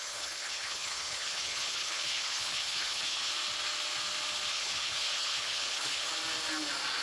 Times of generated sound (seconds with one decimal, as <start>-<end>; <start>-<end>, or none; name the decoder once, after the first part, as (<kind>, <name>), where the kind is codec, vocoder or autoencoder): 0.0-3.3 (codec, HILCodec); 4.5-6.1